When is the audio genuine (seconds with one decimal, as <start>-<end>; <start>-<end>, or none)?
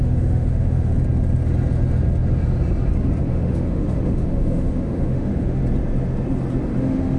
0.9-3.2; 5.6-6.8